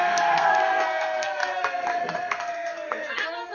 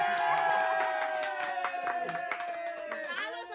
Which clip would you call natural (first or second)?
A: second